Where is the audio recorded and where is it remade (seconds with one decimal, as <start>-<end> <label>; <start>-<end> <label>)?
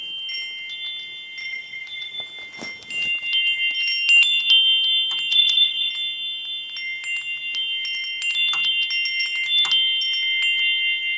0.0-1.4 recorded; 1.4-2.2 remade; 2.2-5.3 recorded; 5.3-5.9 remade; 5.9-11.2 recorded